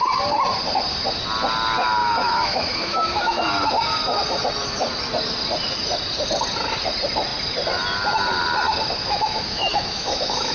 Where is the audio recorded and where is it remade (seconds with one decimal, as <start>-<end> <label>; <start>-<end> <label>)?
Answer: 0.0-2.0 recorded; 2.0-3.5 remade; 3.5-9.0 recorded; 9.0-10.5 remade